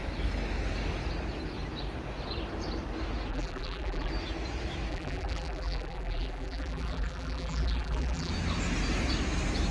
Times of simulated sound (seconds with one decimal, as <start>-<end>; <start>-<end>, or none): 3.3-4.1; 4.9-8.3